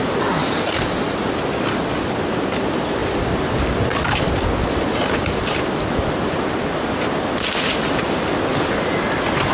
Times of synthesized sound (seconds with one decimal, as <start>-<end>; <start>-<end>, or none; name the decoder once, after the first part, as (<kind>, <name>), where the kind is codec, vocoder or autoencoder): none